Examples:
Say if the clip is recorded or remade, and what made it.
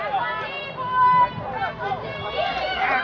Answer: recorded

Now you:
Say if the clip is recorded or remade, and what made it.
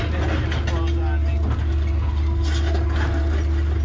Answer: recorded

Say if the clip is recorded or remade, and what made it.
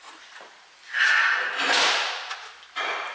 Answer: recorded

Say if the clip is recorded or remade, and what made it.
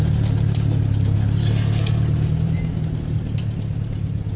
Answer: recorded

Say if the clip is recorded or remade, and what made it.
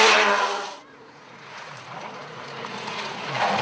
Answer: remade, vocoder, Vocos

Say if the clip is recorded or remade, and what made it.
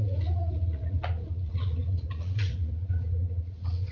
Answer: remade, vocoder, Vocos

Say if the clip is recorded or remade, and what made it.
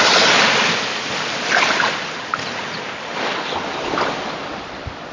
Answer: recorded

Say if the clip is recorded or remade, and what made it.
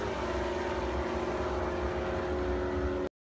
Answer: recorded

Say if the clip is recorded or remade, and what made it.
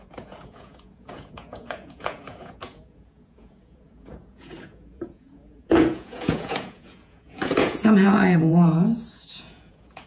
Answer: remade, vocoder, Vocos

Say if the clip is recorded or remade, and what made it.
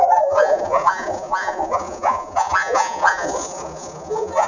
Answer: remade, vocoder, Vocos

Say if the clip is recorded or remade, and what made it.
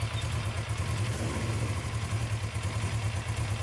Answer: recorded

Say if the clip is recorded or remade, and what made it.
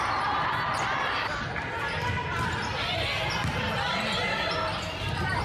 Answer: recorded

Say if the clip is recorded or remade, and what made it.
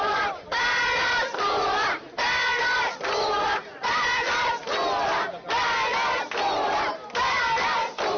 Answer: recorded